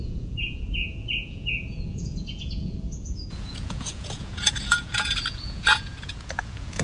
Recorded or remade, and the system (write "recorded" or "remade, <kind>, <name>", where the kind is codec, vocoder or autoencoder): remade, vocoder, Vocos